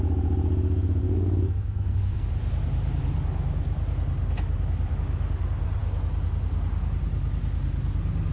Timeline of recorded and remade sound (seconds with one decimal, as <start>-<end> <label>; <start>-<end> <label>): 0.0-1.0 recorded; 1.0-2.3 remade; 2.3-8.3 recorded